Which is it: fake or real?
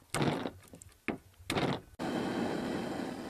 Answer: real